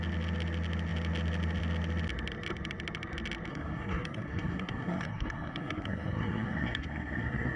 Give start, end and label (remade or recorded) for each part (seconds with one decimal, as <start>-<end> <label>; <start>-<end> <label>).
0.0-3.5 recorded; 3.5-7.6 remade